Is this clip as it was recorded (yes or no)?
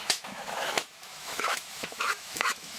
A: no